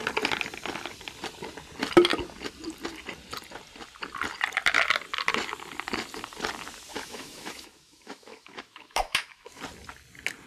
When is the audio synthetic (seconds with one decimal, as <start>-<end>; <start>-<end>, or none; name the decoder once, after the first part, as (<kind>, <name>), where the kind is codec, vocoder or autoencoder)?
6.9-9.6 (autoencoder, DAC-VAE)